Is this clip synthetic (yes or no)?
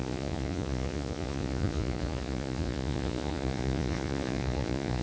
yes